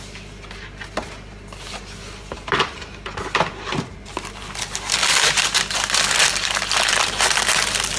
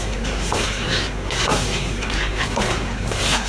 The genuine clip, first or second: first